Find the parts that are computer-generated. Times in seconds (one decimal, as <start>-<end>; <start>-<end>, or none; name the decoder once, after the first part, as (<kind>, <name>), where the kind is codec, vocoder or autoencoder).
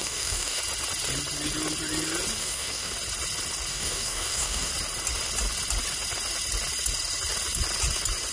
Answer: 0.0-0.6 (codec, DAC); 2.4-2.9; 3.7-4.7